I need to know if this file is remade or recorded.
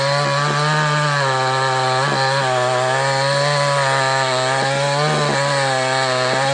recorded